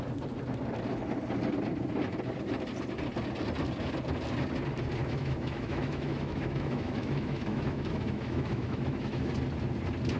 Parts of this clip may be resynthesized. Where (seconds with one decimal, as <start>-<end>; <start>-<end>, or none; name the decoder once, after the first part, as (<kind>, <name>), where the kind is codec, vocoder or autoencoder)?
5.0-9.3 (autoencoder, DAC-VAE)

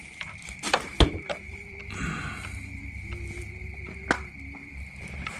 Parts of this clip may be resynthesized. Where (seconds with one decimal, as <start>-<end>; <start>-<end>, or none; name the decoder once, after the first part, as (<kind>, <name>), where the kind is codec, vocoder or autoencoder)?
0.0-1.8 (vocoder, BigVGAN v2); 5.0-5.4